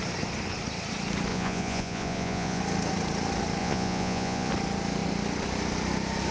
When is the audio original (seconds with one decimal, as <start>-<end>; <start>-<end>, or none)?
0.0-1.3; 2.6-3.6; 4.5-6.3

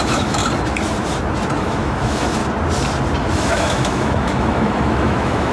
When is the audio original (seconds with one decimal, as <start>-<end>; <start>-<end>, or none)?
0.4-1.6; 2.4-3.3

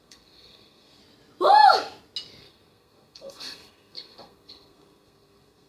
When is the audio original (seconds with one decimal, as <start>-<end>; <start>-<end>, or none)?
1.0-2.4

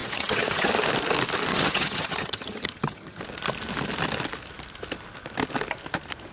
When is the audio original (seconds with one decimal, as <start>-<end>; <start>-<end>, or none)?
0.7-1.5; 3.2-6.3

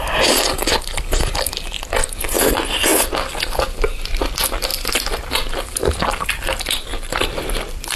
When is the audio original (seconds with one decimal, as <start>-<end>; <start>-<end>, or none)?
0.0-6.9; 7.6-8.0

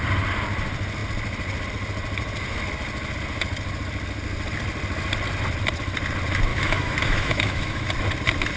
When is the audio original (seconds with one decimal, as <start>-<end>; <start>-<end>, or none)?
0.0-6.5; 7.9-8.6

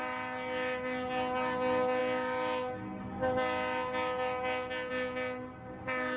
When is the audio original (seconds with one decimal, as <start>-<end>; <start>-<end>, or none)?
0.0-6.2